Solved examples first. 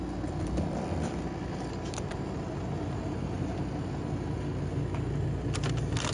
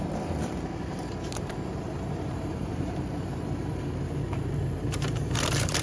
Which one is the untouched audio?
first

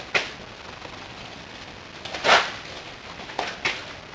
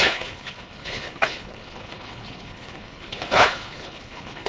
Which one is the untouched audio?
first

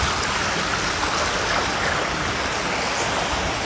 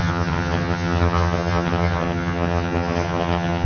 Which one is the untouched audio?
first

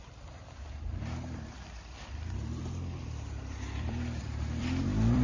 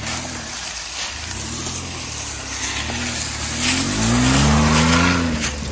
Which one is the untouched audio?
second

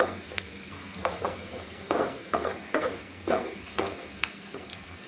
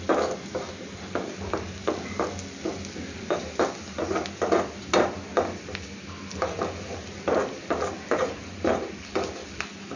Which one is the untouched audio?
second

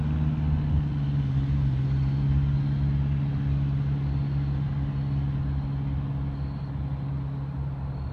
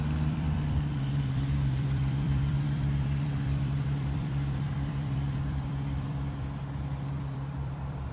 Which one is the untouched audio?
first